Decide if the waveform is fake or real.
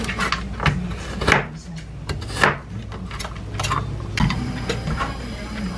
real